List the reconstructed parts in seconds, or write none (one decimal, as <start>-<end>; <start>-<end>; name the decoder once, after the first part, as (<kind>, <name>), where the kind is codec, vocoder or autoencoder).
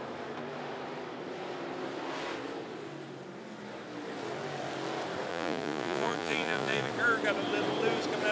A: 5.3-6.9 (vocoder, Vocos)